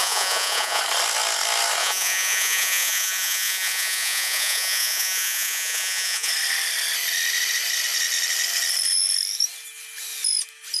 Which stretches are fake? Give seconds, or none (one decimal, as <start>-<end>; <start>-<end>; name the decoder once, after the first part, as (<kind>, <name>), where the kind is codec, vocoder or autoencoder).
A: 0.0-0.8 (vocoder, Vocos); 1.8-6.3